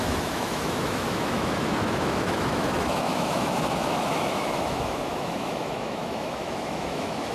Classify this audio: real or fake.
fake